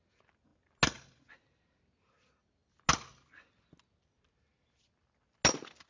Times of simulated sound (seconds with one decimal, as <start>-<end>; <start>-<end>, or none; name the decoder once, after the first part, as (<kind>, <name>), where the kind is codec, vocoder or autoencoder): none